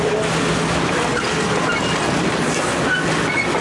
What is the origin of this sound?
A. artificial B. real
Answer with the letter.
B